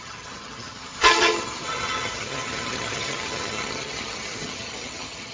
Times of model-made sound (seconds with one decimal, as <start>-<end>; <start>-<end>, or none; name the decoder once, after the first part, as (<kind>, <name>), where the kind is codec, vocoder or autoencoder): 0.0-5.3 (vocoder, HiFi-GAN)